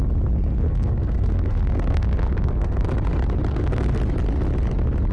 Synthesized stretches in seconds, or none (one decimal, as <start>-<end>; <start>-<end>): 0.5-2.9; 3.5-4.0